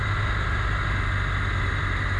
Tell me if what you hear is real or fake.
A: real